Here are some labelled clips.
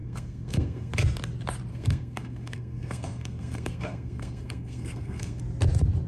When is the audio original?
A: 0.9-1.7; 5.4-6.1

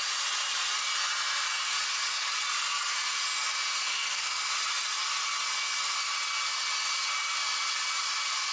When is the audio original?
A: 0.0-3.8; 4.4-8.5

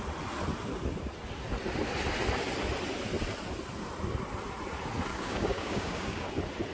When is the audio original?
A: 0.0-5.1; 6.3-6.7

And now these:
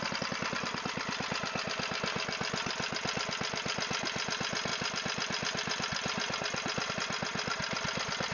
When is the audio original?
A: 0.0-8.3